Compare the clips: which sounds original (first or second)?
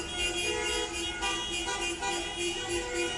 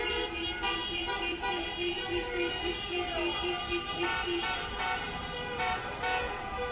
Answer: first